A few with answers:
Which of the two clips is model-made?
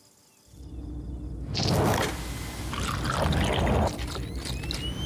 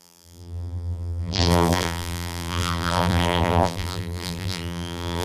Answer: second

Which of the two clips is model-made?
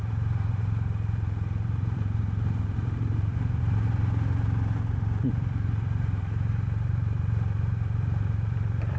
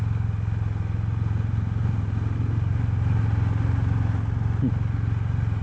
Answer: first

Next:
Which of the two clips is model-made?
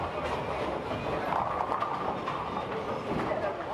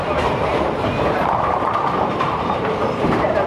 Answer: second